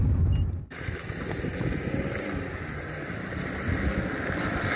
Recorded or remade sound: recorded